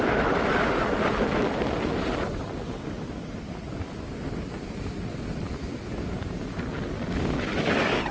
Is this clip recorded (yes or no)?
yes